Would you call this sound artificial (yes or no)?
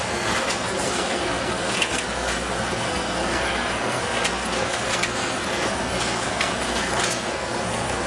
yes